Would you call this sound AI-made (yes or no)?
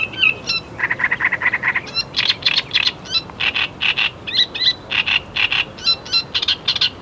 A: no